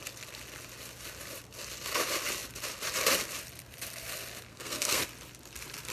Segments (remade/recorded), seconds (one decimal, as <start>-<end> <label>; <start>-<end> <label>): 0.0-4.5 recorded; 4.5-5.0 remade; 5.0-5.9 recorded